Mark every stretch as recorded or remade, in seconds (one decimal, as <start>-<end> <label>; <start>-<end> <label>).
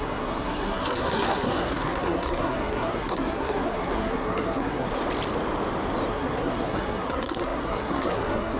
0.0-5.0 remade; 5.0-6.1 recorded; 6.1-8.6 remade